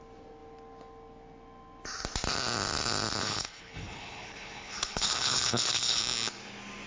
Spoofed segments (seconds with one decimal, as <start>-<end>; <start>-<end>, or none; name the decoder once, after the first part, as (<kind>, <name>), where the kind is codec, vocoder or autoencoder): 3.2-6.0 (codec, HILCodec)